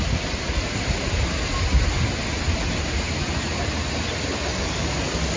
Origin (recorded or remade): recorded